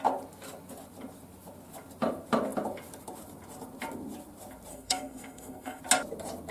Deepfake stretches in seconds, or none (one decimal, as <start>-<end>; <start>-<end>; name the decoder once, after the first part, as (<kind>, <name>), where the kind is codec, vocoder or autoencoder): 4.7-5.8 (codec, SNAC)